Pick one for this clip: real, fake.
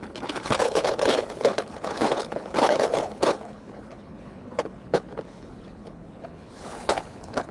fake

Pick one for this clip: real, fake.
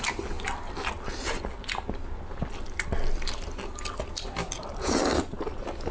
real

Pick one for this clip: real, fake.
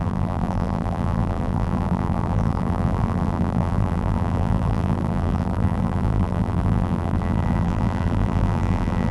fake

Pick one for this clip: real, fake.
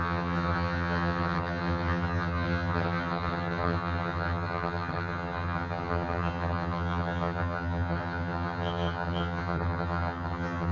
fake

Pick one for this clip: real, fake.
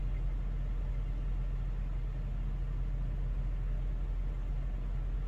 real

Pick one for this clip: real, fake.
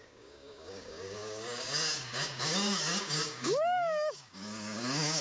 fake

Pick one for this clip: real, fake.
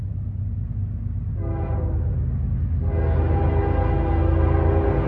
real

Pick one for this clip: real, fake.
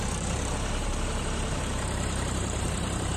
fake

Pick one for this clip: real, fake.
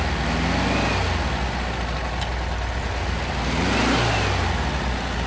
real